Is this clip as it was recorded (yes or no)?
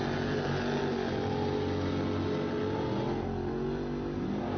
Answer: yes